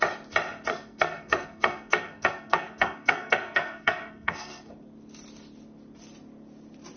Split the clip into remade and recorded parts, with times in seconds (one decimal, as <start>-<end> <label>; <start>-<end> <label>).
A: 0.0-0.7 recorded; 0.7-4.7 remade; 4.7-7.0 recorded